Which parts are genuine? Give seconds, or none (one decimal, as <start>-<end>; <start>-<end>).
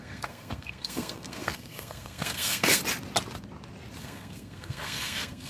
2.8-4.0